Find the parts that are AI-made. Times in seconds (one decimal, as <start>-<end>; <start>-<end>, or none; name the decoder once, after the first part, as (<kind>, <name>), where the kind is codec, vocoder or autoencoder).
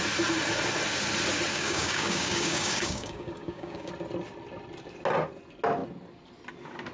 1.5-3.9 (codec, DAC)